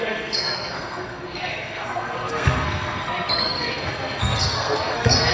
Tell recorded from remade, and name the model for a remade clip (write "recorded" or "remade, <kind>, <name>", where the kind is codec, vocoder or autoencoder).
remade, codec, SNAC